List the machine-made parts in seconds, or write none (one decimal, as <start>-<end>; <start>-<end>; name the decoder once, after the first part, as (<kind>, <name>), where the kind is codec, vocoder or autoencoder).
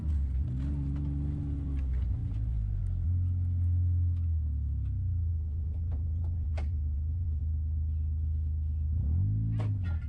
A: 2.2-2.8 (vocoder, Vocos); 5.3-7.4